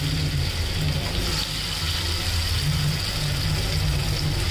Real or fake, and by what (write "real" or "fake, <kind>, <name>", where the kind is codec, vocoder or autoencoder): real